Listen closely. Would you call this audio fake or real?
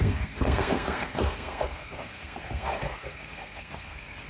fake